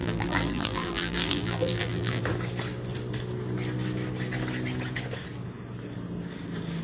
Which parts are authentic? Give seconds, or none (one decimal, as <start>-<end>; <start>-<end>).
2.2-6.8